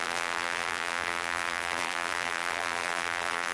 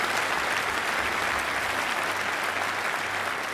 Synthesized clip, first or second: first